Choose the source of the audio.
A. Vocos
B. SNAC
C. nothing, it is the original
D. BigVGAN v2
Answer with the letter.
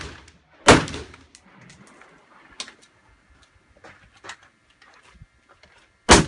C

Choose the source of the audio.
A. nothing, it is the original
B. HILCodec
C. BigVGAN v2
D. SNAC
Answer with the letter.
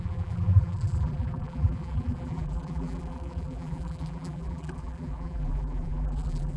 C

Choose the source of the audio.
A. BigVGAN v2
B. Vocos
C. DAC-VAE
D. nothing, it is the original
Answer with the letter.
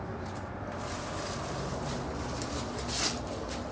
D